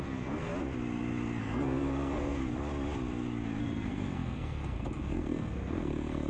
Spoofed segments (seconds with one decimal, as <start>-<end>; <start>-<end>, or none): 0.0-0.5; 1.4-2.4; 3.6-6.3